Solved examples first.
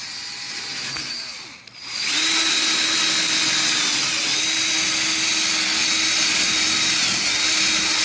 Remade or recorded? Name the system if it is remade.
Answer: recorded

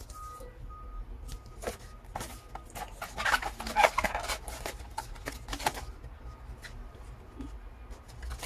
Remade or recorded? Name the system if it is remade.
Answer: recorded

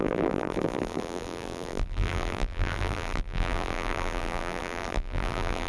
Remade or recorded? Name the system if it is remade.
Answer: remade, vocoder, BigVGAN v2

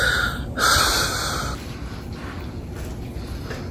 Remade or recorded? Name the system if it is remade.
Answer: recorded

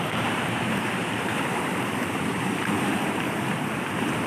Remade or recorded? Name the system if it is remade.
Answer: remade, vocoder, BigVGAN v2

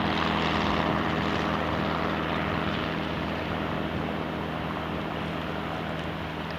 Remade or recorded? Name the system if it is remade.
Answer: recorded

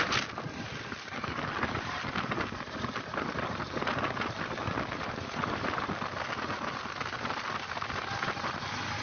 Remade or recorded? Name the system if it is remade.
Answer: remade, vocoder, BigVGAN v2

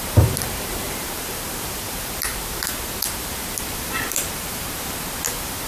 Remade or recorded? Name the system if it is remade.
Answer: remade, vocoder, BigVGAN v2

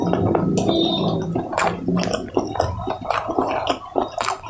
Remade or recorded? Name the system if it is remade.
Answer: recorded